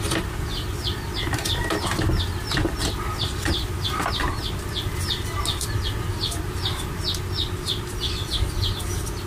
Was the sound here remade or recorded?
recorded